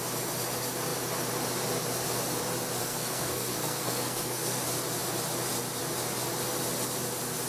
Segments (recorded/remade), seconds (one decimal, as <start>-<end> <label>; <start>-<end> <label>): 0.0-2.8 recorded; 2.8-4.6 remade; 4.6-7.5 recorded